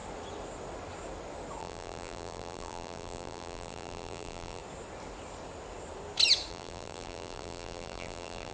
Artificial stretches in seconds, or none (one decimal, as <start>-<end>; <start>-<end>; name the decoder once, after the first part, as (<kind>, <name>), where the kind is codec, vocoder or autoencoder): 1.6-4.6 (vocoder, BigVGAN v2); 6.5-8.5